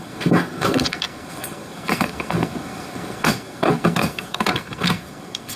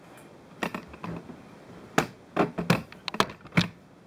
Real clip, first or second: second